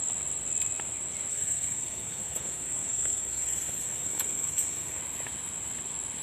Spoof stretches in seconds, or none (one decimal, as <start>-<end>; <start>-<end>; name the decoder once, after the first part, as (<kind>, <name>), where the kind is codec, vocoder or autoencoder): 1.3-5.0 (codec, SNAC)